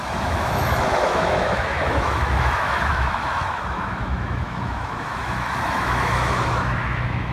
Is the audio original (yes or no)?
no